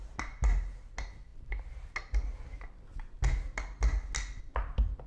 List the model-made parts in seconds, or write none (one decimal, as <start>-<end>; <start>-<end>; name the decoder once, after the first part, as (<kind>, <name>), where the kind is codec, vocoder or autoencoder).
none